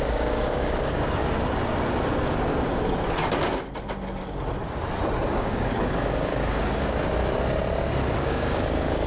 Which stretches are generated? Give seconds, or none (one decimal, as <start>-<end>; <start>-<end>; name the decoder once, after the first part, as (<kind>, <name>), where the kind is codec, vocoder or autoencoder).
0.0-1.2 (codec, DAC); 5.3-6.3; 8.1-9.1